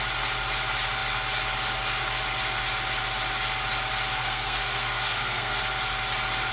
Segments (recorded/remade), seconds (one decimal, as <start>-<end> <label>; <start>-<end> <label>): 0.0-4.2 recorded; 4.2-5.6 remade; 5.6-6.5 recorded